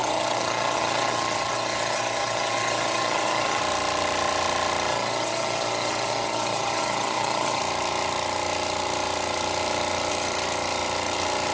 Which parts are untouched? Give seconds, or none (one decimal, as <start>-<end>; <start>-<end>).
3.6-4.9; 7.6-11.5